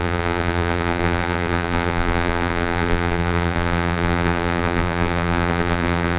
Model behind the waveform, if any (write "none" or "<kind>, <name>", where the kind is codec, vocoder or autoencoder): vocoder, BigVGAN v2